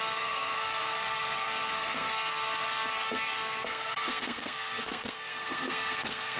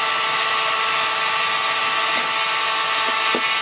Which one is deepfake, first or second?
first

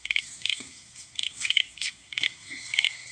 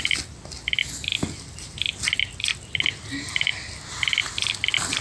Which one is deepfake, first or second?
first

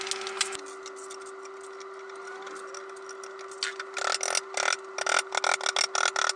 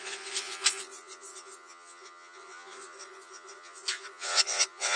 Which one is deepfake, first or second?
second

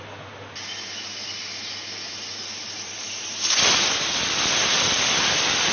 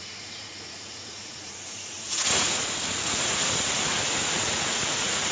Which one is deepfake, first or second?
second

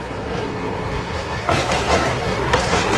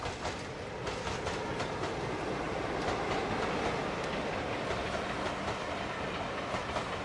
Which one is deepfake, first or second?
first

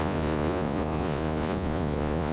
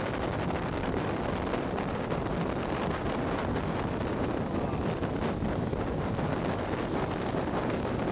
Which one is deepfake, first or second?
first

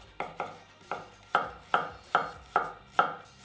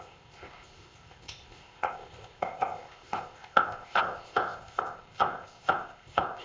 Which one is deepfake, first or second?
second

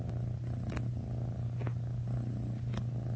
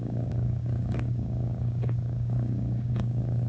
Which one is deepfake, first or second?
second